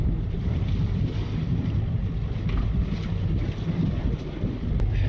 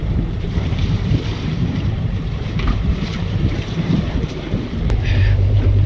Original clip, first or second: first